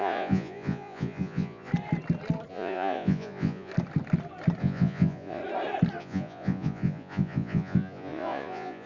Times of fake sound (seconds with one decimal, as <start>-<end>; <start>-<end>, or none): 0.0-1.7; 2.5-3.7; 4.6-5.4; 6.0-8.9